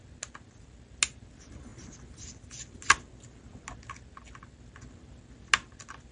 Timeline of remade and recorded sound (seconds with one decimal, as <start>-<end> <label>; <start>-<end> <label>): 0.0-6.1 recorded